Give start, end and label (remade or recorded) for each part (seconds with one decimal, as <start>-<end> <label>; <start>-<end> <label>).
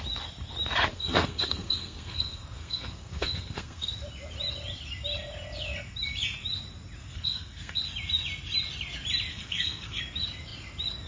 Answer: 0.0-0.9 recorded; 0.9-3.9 remade; 3.9-7.0 recorded; 7.0-7.8 remade; 7.8-9.3 recorded; 9.3-10.0 remade; 10.0-11.1 recorded